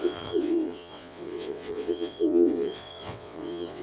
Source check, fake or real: fake